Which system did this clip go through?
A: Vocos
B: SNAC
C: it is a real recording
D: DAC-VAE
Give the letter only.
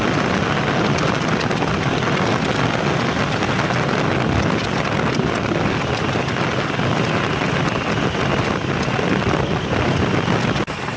C